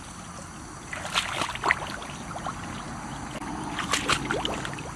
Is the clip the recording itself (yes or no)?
yes